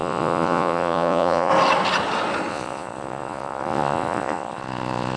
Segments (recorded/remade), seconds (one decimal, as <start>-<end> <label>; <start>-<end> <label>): 0.0-1.5 remade; 1.5-2.5 recorded; 2.5-5.2 remade